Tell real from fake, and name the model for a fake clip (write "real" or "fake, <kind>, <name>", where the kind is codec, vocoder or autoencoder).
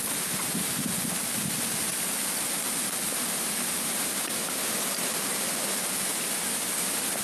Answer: real